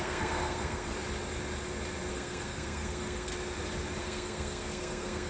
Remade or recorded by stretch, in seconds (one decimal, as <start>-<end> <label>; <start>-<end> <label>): 0.0-0.9 remade; 0.9-2.1 recorded; 2.1-3.3 remade; 3.3-4.0 recorded; 4.0-5.3 remade